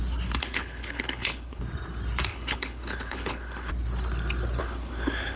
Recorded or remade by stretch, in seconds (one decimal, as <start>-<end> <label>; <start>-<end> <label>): 0.0-0.4 recorded; 0.4-1.6 remade; 1.6-2.3 recorded; 2.3-3.7 remade; 3.7-4.6 recorded; 4.6-5.4 remade